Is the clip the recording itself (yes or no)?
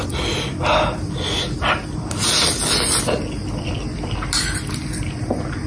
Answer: yes